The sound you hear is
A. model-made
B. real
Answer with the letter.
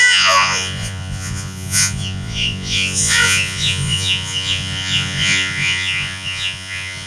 A